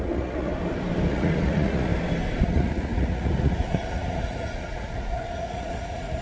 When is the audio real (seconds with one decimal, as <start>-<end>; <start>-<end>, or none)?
0.5-1.1; 1.9-2.4